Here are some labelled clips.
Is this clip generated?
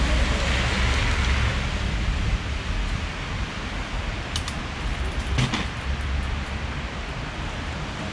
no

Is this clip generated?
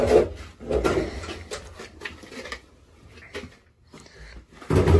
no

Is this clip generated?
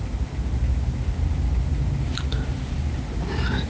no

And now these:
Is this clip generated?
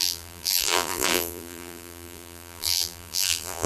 yes